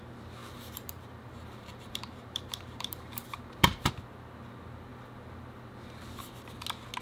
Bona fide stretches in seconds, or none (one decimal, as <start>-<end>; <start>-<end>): 0.0-0.4; 3.9-7.0